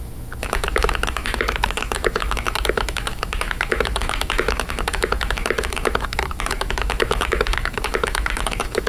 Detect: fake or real fake